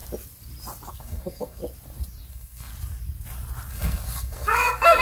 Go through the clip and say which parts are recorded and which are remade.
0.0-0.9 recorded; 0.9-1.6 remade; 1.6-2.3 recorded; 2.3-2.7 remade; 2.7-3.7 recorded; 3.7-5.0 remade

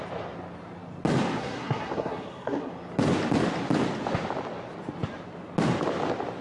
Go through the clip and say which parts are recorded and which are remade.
0.0-1.4 recorded; 1.4-2.7 remade; 2.7-6.4 recorded

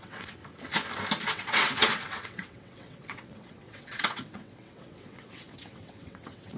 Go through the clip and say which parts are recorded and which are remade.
0.0-0.4 remade; 0.4-1.3 recorded; 1.3-6.6 remade

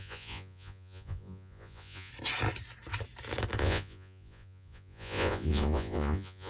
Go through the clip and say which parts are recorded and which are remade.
0.0-2.1 remade; 2.1-3.6 recorded; 3.6-6.5 remade

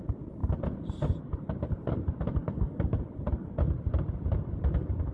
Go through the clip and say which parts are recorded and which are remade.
0.0-2.4 recorded; 2.4-3.0 remade; 3.0-5.1 recorded

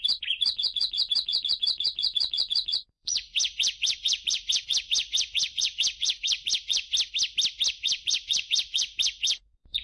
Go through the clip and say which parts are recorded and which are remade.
0.0-6.9 remade; 6.9-7.7 recorded; 7.7-9.8 remade

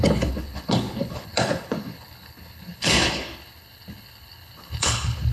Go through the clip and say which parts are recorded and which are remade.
0.0-5.3 remade